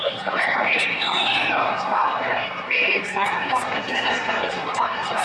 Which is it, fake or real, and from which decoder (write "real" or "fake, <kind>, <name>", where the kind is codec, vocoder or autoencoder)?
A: fake, codec, SNAC